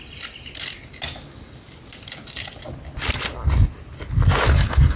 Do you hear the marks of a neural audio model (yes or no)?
no